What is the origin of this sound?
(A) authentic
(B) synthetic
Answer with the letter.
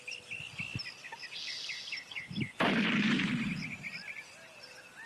A